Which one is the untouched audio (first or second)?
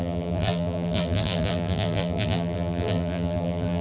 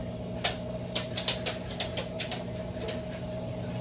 second